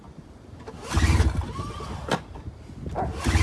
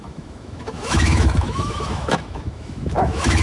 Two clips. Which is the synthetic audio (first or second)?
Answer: second